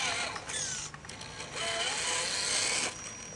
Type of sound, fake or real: real